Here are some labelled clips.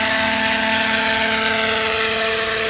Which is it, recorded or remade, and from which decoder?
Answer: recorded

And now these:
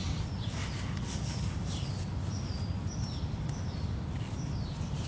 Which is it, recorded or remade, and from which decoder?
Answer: recorded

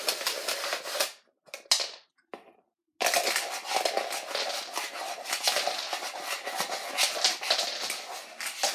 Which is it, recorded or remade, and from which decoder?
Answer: recorded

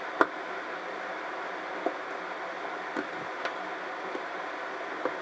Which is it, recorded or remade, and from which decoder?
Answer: recorded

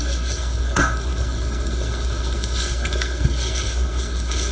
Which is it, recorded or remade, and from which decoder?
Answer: remade, codec, SNAC